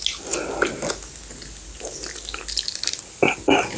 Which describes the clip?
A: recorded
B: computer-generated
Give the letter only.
A